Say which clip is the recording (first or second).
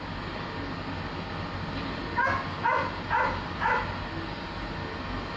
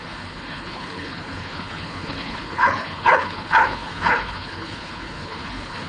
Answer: first